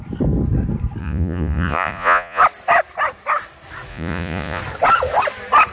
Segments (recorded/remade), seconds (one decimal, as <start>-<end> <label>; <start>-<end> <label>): 0.0-1.0 recorded; 1.0-2.4 remade; 2.4-3.9 recorded; 3.9-4.6 remade; 4.6-5.7 recorded